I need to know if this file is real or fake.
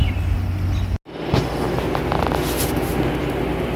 real